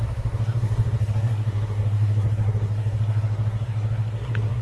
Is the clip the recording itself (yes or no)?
no